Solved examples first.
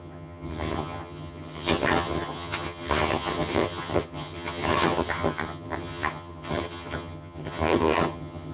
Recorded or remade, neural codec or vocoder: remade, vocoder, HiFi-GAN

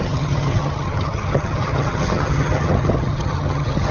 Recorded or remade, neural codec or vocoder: remade, vocoder, HiFi-GAN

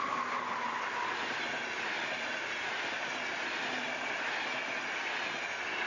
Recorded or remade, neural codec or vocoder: recorded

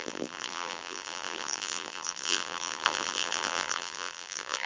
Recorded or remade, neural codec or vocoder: remade, vocoder, BigVGAN v2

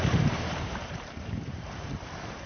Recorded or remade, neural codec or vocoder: remade, vocoder, BigVGAN v2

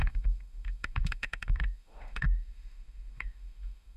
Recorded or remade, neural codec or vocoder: remade, autoencoder, DAC-VAE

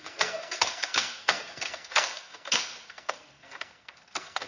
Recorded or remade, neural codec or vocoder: remade, codec, SNAC